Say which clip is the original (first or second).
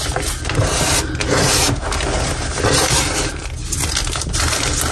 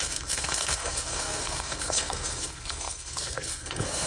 first